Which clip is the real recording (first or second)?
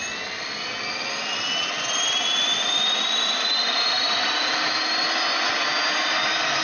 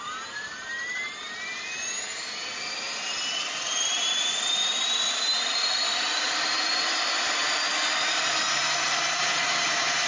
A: first